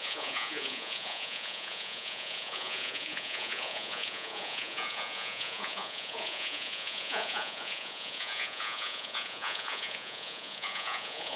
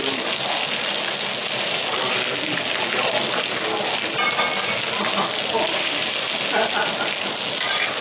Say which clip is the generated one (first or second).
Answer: first